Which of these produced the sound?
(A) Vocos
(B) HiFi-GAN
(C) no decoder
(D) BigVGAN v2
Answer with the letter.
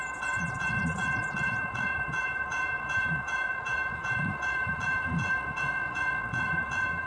A